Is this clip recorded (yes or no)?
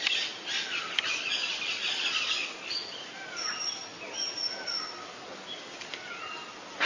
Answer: yes